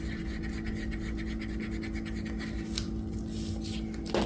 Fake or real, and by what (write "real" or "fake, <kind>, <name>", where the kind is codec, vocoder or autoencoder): real